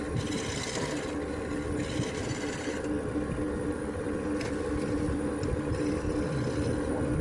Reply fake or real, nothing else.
real